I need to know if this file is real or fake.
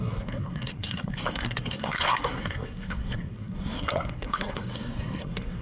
fake